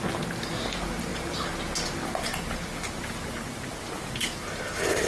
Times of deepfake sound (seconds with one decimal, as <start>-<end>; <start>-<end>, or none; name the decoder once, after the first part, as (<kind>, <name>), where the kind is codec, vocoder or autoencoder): none

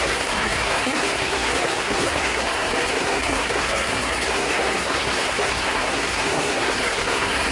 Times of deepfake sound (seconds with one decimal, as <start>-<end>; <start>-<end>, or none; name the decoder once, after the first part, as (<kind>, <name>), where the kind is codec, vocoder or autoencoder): 0.0-7.5 (codec, SNAC)

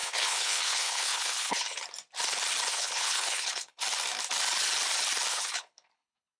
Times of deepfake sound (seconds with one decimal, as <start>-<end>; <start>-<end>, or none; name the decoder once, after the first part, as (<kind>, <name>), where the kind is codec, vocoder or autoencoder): 0.0-1.8 (codec, HILCodec); 2.7-3.8; 5.3-6.4